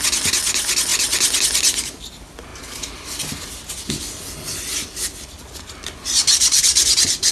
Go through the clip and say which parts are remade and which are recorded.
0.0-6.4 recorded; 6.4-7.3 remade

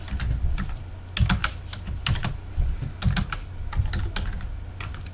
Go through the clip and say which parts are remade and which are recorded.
0.0-5.1 recorded

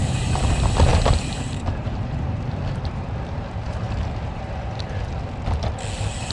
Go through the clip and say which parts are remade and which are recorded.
0.0-0.9 recorded; 0.9-4.7 remade; 4.7-6.3 recorded